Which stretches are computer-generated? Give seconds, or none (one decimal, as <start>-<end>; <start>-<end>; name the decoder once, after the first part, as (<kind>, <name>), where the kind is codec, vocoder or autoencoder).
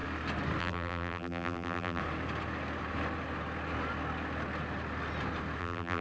0.6-2.0 (vocoder, BigVGAN v2); 5.6-6.0